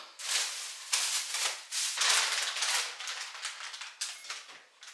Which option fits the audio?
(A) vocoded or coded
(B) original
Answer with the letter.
B